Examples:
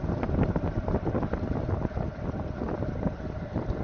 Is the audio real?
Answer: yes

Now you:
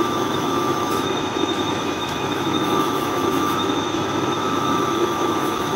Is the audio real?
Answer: no